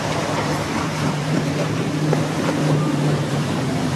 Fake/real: fake